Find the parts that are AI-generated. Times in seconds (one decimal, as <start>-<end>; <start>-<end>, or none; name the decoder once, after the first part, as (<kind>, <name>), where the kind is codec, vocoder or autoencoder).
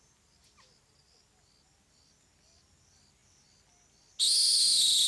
none